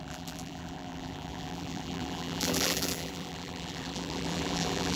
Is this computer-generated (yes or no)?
yes